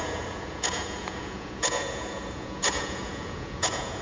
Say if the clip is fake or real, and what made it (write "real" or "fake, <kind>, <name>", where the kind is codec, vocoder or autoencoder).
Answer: fake, vocoder, Vocos